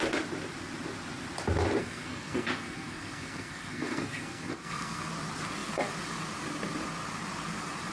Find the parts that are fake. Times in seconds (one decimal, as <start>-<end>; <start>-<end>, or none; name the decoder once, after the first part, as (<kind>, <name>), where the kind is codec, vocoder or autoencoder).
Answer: 1.8-5.1 (codec, SNAC)